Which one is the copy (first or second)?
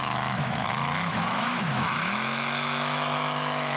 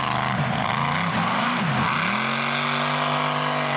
first